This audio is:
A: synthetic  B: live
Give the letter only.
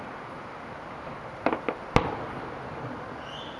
B